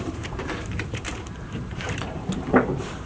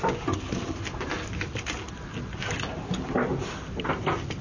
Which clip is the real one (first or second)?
second